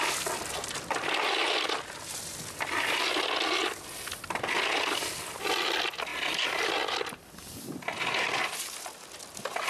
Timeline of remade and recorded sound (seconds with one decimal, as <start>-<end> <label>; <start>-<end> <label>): 0.0-9.7 recorded